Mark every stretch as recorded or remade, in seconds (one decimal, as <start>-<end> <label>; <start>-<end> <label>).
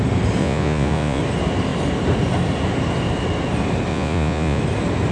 0.0-0.4 recorded; 0.4-1.2 remade; 1.2-3.9 recorded; 3.9-4.6 remade; 4.6-5.1 recorded